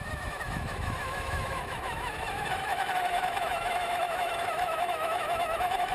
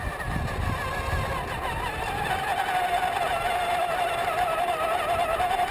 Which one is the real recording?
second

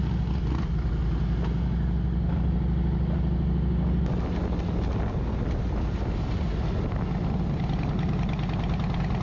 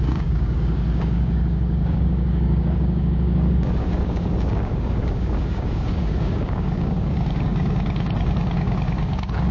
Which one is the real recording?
first